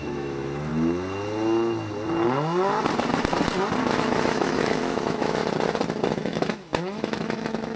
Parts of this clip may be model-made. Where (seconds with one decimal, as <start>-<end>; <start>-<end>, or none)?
0.0-0.7; 3.8-5.4; 6.1-7.8